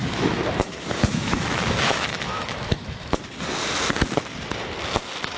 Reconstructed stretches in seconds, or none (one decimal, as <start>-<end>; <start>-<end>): 0.0-3.2